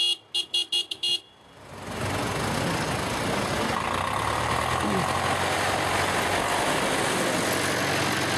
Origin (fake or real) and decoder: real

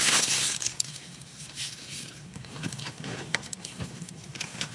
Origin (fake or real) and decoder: fake, codec, SNAC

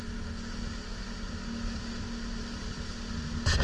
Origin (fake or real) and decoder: real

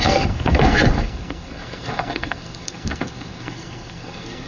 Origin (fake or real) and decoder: fake, codec, SNAC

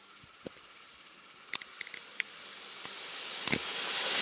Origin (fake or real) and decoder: real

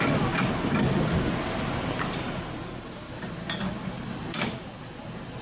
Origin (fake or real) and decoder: real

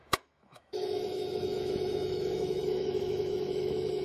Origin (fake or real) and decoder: fake, autoencoder, DAC-VAE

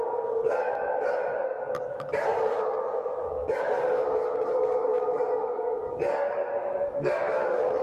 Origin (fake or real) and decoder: fake, codec, DAC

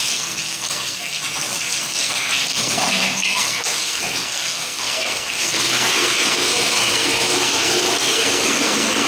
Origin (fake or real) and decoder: fake, codec, SNAC